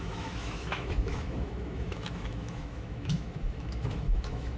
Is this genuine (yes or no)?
no